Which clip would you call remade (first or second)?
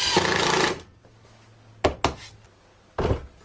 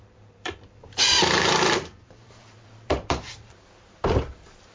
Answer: second